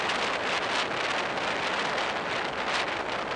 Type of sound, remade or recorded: recorded